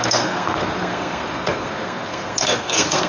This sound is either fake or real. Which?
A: fake